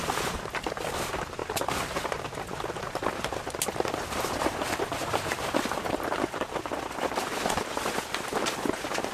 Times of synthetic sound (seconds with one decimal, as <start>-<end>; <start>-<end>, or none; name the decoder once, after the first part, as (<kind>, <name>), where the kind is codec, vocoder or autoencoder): none

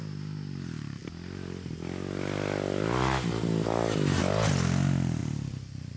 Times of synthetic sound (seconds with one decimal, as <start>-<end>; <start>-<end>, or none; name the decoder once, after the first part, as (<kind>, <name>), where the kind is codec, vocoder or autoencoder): 5.2-6.0 (vocoder, BigVGAN v2)

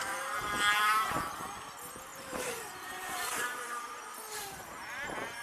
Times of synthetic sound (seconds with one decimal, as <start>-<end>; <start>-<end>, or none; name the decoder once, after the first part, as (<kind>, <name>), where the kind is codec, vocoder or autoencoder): 2.1-4.7 (vocoder, BigVGAN v2)